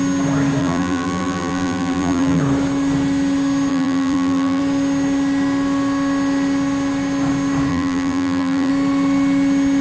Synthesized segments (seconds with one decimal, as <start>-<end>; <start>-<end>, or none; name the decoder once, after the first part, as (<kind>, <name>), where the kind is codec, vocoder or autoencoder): 0.6-2.4 (vocoder, BigVGAN v2); 3.7-4.6; 7.7-8.7